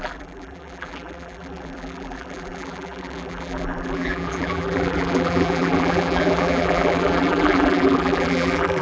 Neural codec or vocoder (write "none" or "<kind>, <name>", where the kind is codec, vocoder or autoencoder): vocoder, BigVGAN v2